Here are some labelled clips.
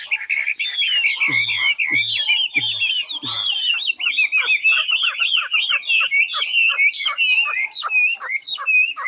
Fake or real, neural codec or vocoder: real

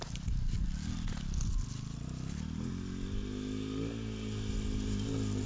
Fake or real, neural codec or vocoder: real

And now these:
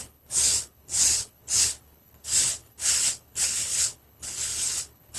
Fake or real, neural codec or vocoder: fake, codec, HILCodec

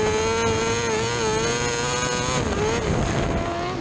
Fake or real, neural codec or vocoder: real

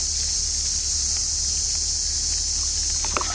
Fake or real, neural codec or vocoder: real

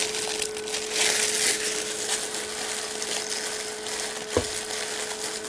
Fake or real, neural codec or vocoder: real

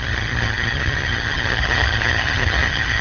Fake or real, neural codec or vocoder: fake, vocoder, HiFi-GAN